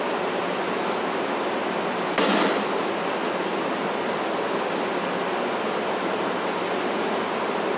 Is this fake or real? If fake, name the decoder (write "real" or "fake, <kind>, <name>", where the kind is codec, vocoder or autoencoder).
real